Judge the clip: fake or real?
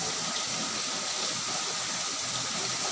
real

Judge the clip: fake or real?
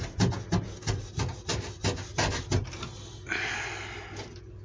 real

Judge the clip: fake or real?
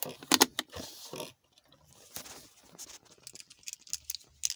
real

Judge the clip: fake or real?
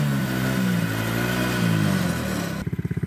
real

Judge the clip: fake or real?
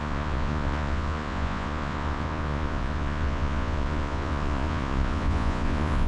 fake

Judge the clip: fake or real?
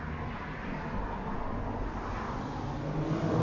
real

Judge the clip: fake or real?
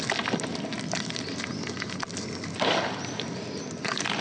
real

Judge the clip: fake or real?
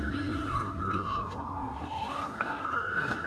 fake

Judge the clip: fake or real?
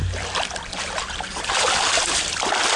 real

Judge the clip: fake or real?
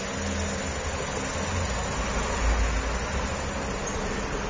real